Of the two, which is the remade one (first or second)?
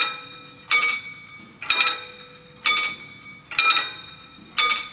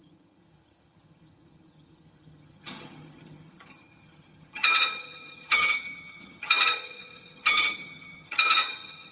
second